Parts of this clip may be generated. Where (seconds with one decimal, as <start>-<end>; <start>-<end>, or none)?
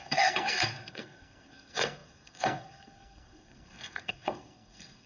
0.0-5.1